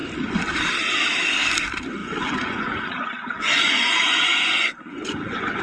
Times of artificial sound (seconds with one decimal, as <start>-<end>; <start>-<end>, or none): 2.0-5.6